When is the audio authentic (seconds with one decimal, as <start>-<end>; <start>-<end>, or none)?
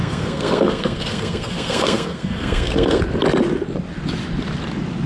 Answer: 3.0-5.1